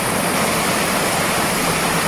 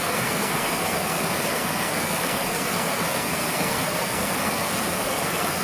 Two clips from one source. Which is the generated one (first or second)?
second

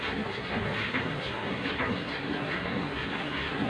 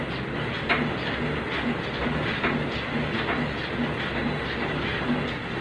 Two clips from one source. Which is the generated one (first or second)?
first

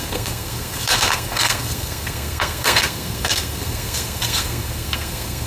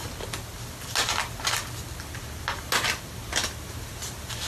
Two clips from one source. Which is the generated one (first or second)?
first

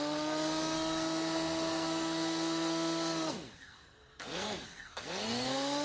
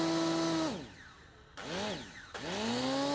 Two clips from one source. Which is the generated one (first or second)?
first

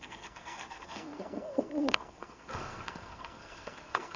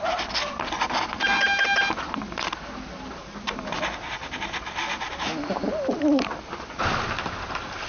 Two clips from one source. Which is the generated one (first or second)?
first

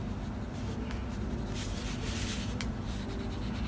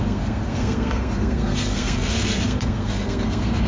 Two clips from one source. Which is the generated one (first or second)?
second